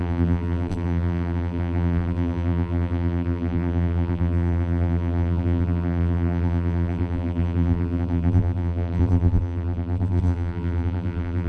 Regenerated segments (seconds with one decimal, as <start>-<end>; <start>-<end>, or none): 0.0-11.5